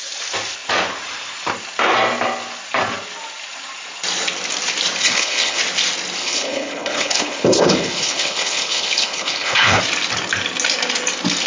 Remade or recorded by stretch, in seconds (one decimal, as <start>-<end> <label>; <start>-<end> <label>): 0.0-5.0 recorded; 5.0-5.6 remade; 5.6-6.2 recorded; 6.2-9.8 remade; 9.8-11.5 recorded